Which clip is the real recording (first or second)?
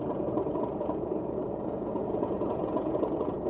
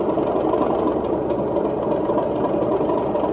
second